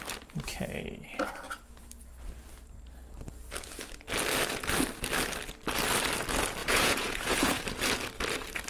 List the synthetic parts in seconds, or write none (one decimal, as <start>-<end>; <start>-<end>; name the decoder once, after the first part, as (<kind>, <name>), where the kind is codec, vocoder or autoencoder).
6.6-7.6 (vocoder, Vocos)